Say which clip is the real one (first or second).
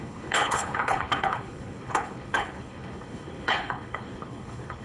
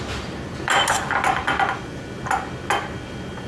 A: second